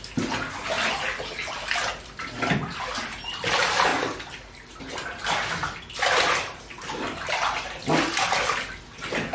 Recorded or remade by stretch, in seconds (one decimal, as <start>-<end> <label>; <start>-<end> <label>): 0.0-9.3 recorded